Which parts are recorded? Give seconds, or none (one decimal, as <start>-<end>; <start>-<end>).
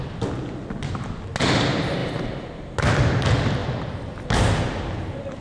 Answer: 0.0-5.4